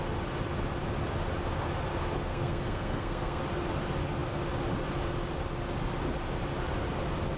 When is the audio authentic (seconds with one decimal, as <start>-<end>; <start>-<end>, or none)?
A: 0.0-2.3; 3.4-7.4